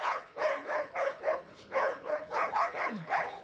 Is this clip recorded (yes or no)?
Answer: no